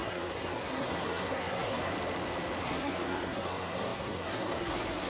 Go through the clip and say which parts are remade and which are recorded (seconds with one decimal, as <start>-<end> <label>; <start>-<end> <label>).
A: 0.0-1.9 remade; 1.9-2.6 recorded; 2.6-5.1 remade